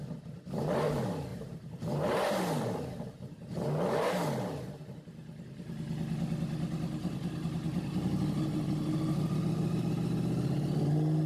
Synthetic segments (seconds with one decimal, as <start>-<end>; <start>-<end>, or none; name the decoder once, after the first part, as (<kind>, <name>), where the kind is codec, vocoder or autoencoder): 1.3-4.7 (vocoder, BigVGAN v2)